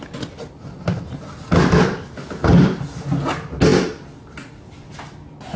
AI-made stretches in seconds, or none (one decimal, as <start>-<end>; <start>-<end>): none